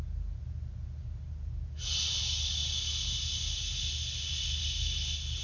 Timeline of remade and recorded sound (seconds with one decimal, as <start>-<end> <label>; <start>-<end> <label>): 0.0-5.4 recorded

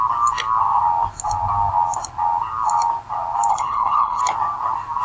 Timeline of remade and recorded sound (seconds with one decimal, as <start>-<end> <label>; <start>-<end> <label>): 0.0-3.5 recorded; 3.5-4.2 remade; 4.2-5.0 recorded

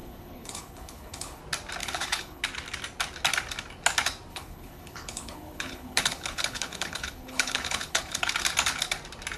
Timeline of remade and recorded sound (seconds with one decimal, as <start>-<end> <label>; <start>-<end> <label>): 0.0-1.4 remade; 1.4-1.8 recorded; 1.8-2.4 remade; 2.4-4.3 recorded; 4.3-8.3 remade; 8.3-9.4 recorded

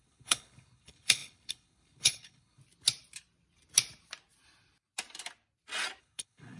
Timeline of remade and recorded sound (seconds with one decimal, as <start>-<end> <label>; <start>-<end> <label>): 0.0-2.6 remade; 2.6-6.0 recorded; 6.0-6.6 remade

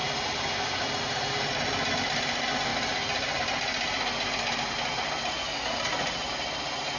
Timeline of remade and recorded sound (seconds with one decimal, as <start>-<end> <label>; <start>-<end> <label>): 0.0-7.0 recorded

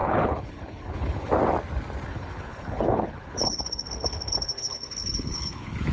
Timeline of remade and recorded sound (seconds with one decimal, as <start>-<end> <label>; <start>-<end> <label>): 0.0-1.3 remade; 1.3-2.1 recorded; 2.1-5.9 remade